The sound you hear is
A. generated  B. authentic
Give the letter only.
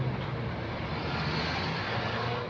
B